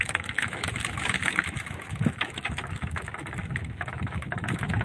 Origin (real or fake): fake